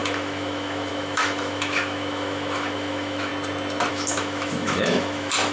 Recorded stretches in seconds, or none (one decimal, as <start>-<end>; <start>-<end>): 3.3-3.9